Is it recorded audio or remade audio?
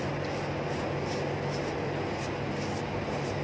recorded